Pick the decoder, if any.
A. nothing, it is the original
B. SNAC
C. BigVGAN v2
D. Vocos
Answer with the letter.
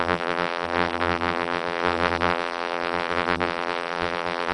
C